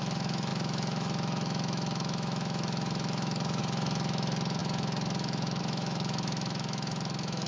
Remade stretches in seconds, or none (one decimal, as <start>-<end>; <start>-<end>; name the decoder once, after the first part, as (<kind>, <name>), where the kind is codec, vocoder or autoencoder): 0.0-7.5 (autoencoder, DAC-VAE)

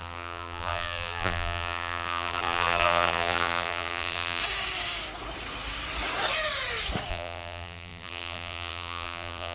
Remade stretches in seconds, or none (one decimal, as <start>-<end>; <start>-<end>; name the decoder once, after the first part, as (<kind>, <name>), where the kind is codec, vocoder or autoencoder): 0.0-4.4 (vocoder, BigVGAN v2); 7.1-9.5

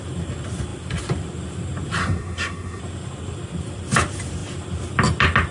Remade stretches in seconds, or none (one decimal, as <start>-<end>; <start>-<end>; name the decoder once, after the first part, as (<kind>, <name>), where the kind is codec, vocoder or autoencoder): 2.0-2.8 (codec, SNAC)

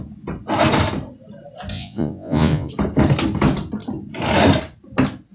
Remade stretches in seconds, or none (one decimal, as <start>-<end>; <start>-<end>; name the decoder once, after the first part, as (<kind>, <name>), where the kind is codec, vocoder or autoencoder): 1.7-2.7 (vocoder, Vocos)

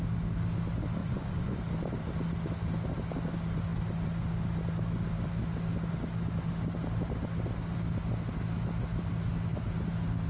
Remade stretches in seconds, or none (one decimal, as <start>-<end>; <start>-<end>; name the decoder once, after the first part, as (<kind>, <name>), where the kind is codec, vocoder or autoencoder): 1.0-1.6 (vocoder, Vocos)

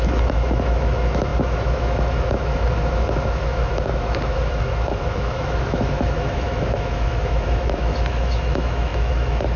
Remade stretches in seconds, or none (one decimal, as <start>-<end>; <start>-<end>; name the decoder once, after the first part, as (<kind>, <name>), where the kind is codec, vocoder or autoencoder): 0.0-9.6 (autoencoder, DAC-VAE)

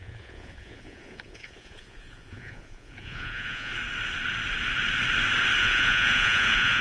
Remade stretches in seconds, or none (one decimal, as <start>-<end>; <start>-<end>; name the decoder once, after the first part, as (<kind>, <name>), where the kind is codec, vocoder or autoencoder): 0.0-3.7 (vocoder, Vocos); 5.6-6.8

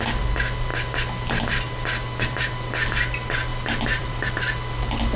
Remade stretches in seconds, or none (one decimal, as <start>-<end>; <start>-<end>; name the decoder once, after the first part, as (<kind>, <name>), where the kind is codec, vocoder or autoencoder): 3.5-4.3 (vocoder, BigVGAN v2)